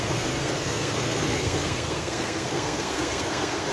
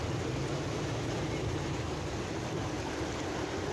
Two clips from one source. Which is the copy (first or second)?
first